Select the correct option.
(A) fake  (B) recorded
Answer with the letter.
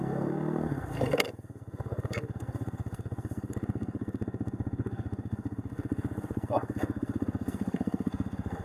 A